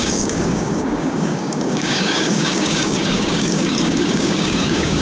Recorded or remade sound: remade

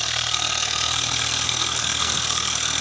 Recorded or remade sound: remade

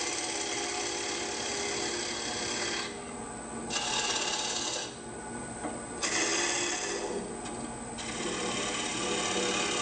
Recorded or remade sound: recorded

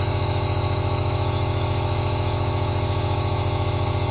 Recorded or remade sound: remade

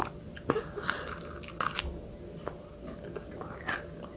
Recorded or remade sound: recorded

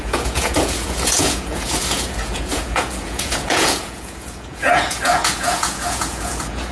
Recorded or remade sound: remade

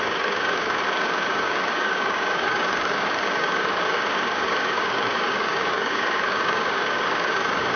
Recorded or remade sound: remade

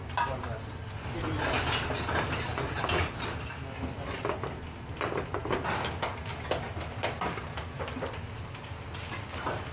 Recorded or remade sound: recorded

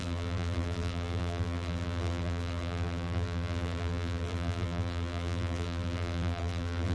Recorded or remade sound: remade